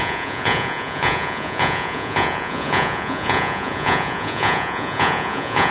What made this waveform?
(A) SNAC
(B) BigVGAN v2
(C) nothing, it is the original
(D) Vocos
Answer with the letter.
D